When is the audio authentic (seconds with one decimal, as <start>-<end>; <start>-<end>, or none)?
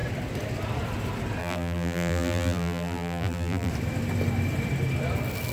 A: 0.0-1.4; 3.7-5.5